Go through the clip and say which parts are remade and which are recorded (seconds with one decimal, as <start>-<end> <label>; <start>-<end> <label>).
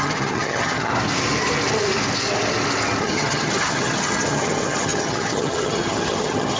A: 0.0-0.9 remade; 0.9-3.0 recorded; 3.0-6.6 remade